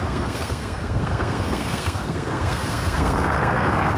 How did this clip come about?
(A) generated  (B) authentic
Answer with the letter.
A